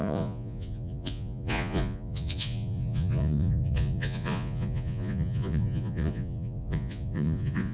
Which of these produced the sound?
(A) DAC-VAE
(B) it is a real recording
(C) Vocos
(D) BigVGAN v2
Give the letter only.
C